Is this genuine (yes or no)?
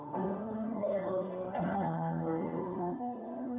no